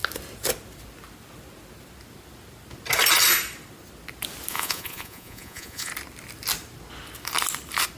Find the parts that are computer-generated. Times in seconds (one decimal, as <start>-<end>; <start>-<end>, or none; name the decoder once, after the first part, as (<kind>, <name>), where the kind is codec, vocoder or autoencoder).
4.5-5.9 (vocoder, Vocos)